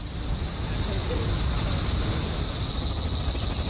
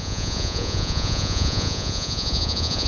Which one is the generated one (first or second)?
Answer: second